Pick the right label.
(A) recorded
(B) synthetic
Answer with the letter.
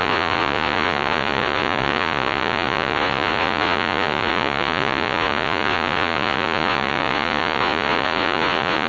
B